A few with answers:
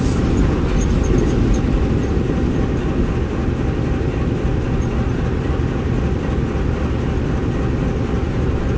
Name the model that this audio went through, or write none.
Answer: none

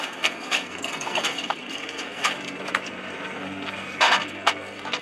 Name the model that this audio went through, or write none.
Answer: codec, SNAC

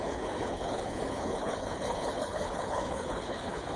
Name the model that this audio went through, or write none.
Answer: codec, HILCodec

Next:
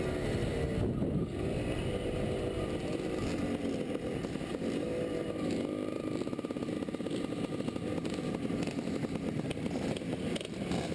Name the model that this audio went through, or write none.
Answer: none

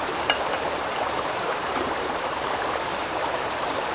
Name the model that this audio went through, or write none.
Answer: vocoder, BigVGAN v2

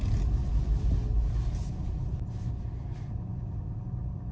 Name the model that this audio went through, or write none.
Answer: none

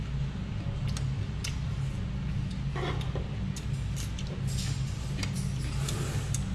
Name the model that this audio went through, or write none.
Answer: none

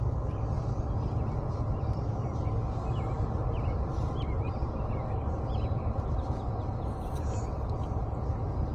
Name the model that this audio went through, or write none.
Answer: none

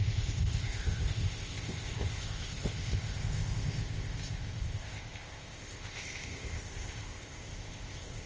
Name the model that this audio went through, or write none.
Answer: codec, ZipCodec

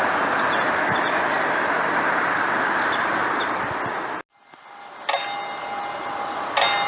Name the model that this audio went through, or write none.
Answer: none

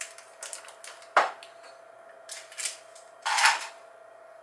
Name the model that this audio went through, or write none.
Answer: none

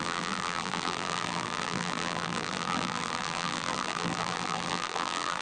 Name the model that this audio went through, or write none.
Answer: vocoder, BigVGAN v2